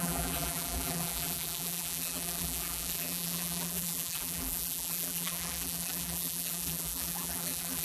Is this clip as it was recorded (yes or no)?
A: no